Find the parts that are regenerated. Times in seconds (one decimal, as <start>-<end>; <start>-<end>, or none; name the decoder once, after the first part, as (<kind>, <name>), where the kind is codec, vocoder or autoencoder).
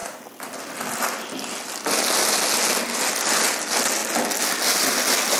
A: none